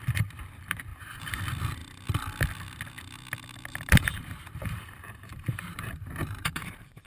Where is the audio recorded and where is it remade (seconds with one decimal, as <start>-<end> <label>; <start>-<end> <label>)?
0.0-0.9 recorded; 0.9-1.4 remade; 1.4-3.7 recorded; 3.7-7.1 remade